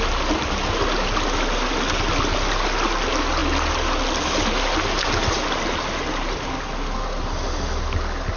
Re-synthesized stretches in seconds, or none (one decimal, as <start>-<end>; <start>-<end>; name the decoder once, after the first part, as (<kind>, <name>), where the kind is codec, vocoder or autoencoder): none